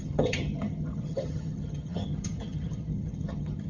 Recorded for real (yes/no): no